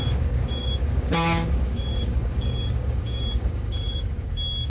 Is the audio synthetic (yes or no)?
yes